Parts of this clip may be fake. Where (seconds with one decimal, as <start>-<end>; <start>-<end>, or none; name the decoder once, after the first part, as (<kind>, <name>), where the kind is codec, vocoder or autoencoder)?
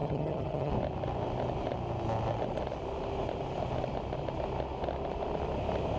0.0-0.7 (vocoder, HiFi-GAN)